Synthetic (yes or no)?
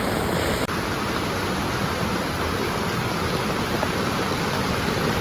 no